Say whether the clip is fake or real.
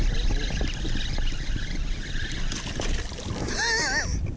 real